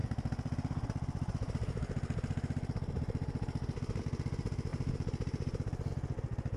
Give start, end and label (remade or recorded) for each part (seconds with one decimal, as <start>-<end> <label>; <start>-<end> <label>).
0.0-4.0 remade; 4.0-4.7 recorded; 4.7-5.9 remade; 5.9-6.6 recorded

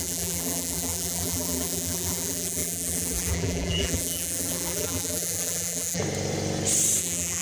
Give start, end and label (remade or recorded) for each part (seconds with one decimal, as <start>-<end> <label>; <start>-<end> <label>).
0.0-6.0 remade; 6.0-7.0 recorded; 7.0-7.4 remade

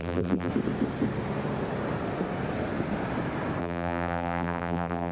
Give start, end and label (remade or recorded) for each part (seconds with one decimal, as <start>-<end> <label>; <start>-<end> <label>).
0.0-0.5 remade; 0.5-3.6 recorded; 3.6-5.1 remade

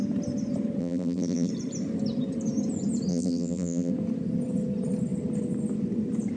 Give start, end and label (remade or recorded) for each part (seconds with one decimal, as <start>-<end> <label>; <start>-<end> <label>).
0.0-0.8 recorded; 0.8-1.5 remade; 1.5-3.1 recorded; 3.1-3.9 remade; 3.9-6.4 recorded

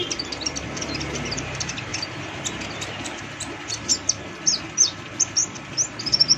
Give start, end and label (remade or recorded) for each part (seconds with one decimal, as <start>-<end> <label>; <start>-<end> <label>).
0.0-1.9 remade; 1.9-2.7 recorded; 2.7-3.9 remade; 3.9-4.7 recorded; 4.7-5.4 remade; 5.4-6.0 recorded; 6.0-6.4 remade

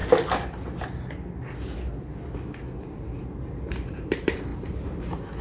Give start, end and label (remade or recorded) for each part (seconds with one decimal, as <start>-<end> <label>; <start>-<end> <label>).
0.0-3.2 recorded; 3.2-5.4 remade

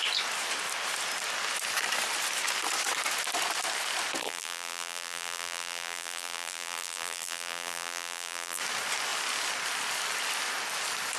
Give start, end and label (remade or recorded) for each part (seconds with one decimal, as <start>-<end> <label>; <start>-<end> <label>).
0.0-4.2 recorded; 4.2-8.6 remade; 8.6-11.2 recorded

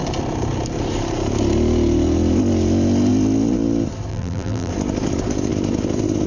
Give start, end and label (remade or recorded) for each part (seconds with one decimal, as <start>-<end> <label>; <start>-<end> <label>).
0.0-4.1 recorded; 4.1-4.7 remade; 4.7-6.3 recorded